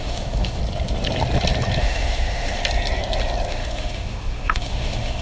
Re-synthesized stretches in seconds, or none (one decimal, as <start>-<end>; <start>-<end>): 0.0-0.6; 1.8-2.6; 3.5-5.2